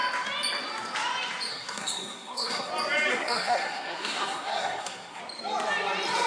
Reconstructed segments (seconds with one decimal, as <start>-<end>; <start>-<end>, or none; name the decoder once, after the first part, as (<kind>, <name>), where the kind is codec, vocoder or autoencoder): 1.5-2.7 (codec, SNAC); 3.1-5.2